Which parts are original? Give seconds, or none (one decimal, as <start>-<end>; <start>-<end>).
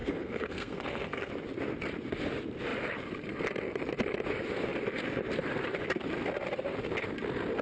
1.3-7.6